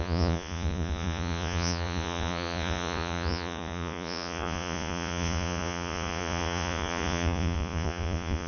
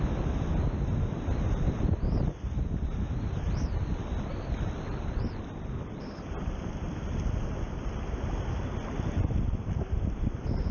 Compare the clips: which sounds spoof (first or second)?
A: first